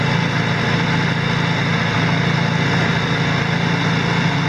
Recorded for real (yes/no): yes